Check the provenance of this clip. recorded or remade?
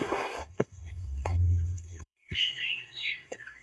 remade